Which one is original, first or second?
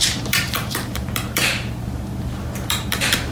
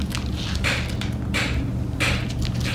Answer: second